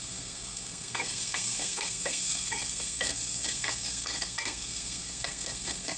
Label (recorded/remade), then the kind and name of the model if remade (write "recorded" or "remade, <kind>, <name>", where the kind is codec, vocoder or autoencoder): remade, codec, SNAC